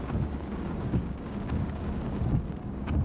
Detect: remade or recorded remade